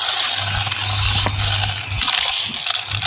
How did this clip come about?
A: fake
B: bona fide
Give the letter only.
B